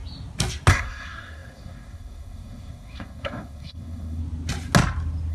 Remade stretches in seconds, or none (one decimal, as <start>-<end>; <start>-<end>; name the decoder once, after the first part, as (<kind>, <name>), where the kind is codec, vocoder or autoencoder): 0.7-4.2 (codec, SNAC)